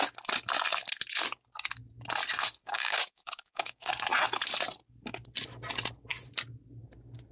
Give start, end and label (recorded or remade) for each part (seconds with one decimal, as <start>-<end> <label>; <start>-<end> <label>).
0.0-2.6 recorded; 2.6-3.9 remade; 3.9-7.3 recorded